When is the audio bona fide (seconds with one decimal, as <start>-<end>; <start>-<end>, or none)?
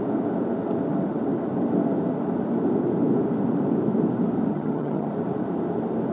0.0-4.5; 5.1-6.1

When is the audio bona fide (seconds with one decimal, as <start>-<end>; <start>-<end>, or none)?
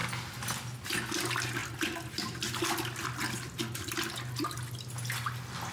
0.0-5.7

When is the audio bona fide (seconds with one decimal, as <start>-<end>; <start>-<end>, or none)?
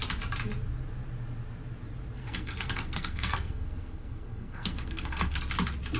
0.0-2.2; 5.4-6.0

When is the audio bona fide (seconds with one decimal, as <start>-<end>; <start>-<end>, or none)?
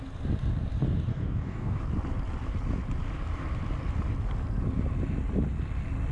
0.0-1.1; 1.8-6.1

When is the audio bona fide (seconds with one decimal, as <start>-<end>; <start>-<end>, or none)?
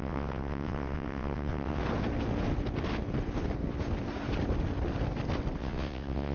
1.8-5.6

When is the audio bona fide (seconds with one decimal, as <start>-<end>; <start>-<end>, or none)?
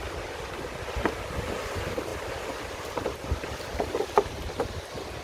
none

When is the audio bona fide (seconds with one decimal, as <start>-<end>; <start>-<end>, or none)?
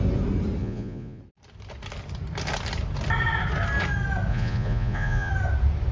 0.0-0.6; 1.2-4.3; 5.3-5.9